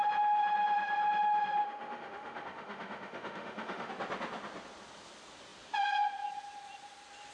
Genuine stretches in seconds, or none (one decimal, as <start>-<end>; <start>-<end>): 0.0-1.6; 3.9-7.3